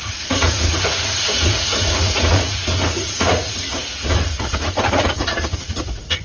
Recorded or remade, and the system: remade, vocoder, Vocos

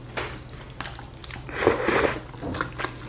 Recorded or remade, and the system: recorded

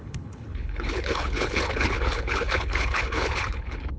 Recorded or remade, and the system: remade, codec, HILCodec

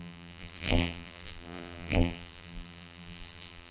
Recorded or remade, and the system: remade, vocoder, BigVGAN v2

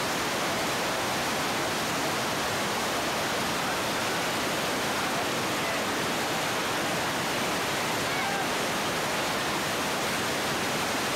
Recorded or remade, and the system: recorded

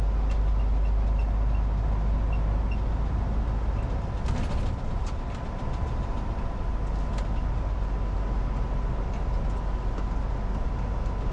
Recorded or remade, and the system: recorded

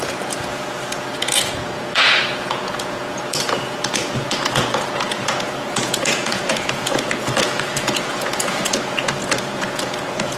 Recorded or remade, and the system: remade, vocoder, Vocos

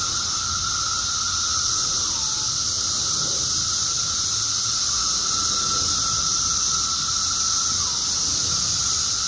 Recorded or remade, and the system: recorded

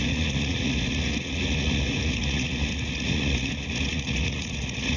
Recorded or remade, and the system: remade, vocoder, Vocos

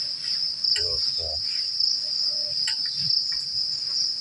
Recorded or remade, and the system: recorded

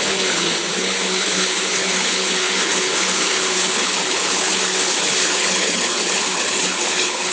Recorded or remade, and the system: remade, codec, HILCodec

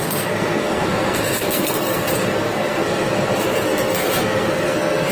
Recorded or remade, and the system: remade, codec, SNAC